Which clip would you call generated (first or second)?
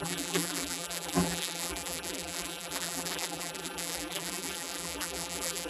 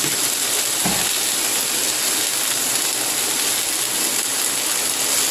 first